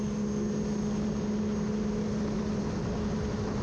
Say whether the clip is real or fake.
real